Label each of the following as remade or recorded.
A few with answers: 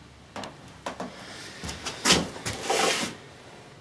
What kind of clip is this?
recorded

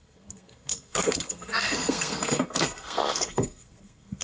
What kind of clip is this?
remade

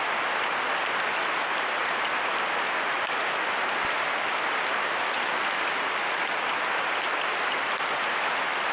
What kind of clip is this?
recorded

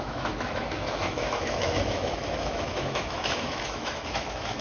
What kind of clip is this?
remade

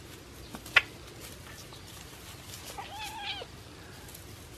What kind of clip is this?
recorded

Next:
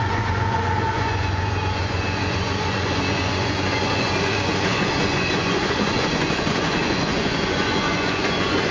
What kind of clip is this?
remade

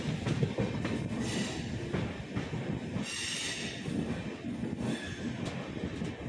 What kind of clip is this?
recorded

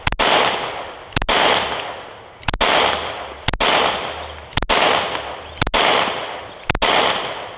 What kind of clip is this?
recorded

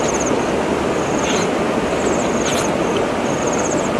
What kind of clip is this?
recorded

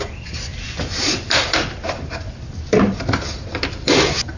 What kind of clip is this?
remade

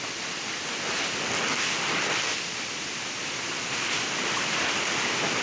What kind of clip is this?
recorded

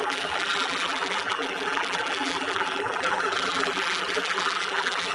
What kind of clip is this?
remade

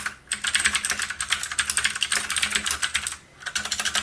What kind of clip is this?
recorded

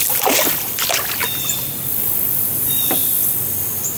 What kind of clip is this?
recorded